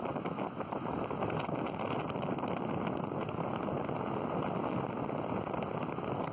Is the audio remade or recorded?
recorded